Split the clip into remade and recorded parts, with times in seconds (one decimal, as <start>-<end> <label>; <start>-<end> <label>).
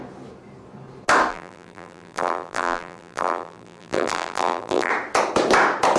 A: 0.0-1.3 recorded; 1.3-4.9 remade; 4.9-6.0 recorded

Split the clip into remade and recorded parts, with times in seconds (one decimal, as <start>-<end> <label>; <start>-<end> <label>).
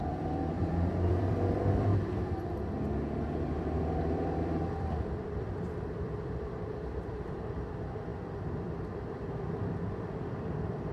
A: 0.0-1.9 remade; 1.9-3.4 recorded; 3.4-10.9 remade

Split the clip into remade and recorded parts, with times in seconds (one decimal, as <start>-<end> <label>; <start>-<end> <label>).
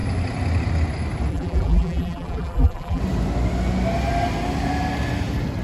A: 0.0-1.3 recorded; 1.3-3.0 remade; 3.0-5.6 recorded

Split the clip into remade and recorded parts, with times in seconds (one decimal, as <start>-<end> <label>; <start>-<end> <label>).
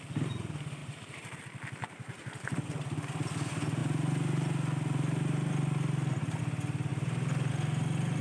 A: 0.0-0.8 recorded; 0.8-1.4 remade; 1.4-1.8 recorded; 1.8-2.8 remade; 2.8-6.9 recorded; 6.9-7.5 remade; 7.5-8.2 recorded